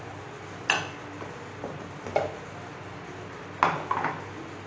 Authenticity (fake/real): real